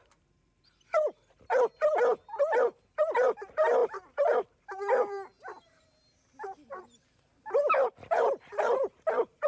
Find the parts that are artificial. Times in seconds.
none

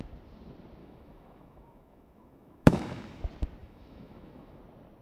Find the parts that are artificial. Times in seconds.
0.8-3.2; 3.6-4.6

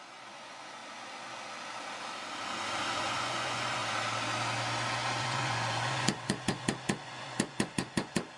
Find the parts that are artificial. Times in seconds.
0.0-0.8; 3.0-3.8; 5.2-8.4

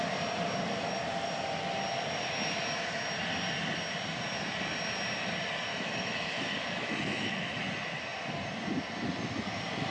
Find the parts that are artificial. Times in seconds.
5.7-7.6

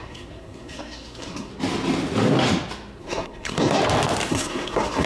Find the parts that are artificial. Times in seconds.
0.0-1.5; 3.0-3.8; 4.3-5.1

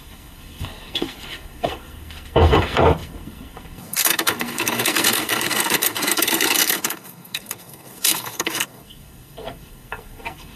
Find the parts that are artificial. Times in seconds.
0.0-10.6